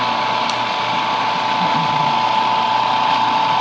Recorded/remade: recorded